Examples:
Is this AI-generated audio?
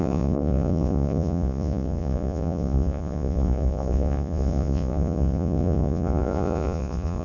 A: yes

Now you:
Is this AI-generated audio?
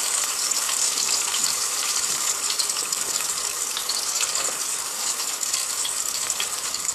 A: yes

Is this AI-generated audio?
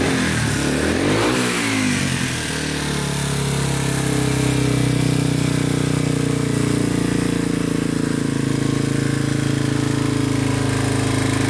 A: no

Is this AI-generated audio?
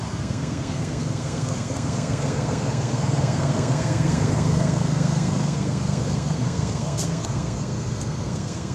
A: yes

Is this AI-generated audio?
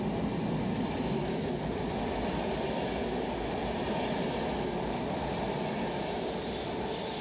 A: no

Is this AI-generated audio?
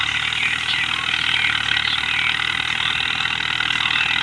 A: no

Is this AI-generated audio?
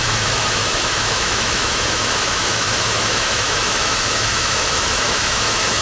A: yes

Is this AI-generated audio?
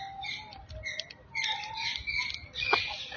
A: no